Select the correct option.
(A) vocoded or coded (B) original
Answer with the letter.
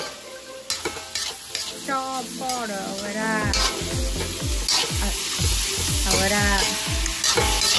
B